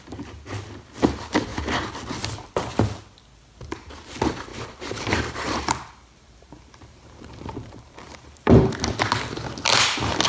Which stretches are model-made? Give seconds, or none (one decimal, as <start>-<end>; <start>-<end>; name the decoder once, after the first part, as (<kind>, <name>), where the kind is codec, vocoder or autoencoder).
4.5-8.7 (vocoder, BigVGAN v2)